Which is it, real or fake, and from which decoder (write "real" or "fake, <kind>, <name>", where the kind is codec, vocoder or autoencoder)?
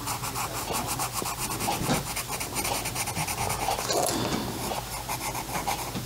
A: real